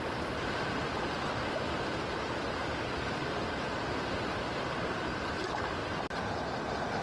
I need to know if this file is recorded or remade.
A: recorded